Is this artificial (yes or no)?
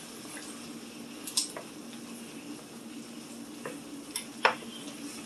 no